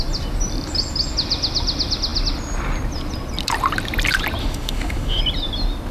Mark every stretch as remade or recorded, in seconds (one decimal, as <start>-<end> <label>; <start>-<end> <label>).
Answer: 0.0-4.4 recorded; 4.4-5.2 remade; 5.2-5.9 recorded